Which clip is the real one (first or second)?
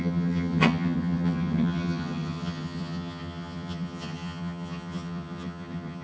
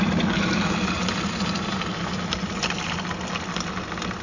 second